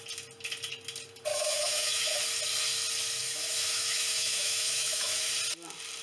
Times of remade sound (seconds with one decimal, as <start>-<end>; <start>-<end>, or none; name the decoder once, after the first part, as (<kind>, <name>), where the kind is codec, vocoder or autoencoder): 1.3-2.2 (autoencoder, DAC-VAE); 3.2-5.3